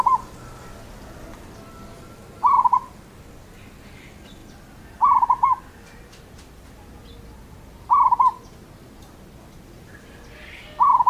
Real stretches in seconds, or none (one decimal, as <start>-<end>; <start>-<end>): 0.0-11.1